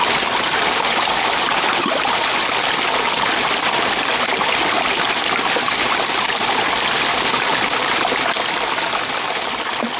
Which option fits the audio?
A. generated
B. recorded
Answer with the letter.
B